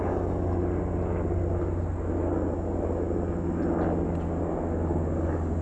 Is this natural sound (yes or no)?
yes